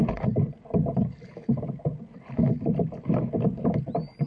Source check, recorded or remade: recorded